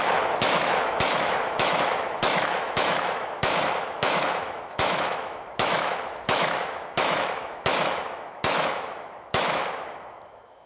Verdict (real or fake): fake